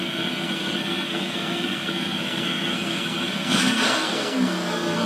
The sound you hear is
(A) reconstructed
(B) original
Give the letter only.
A